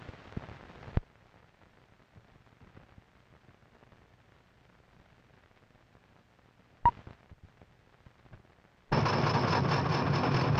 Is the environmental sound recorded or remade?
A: recorded